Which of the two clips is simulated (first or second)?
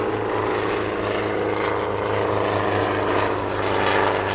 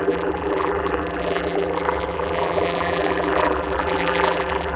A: second